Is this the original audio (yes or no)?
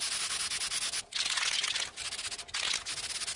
yes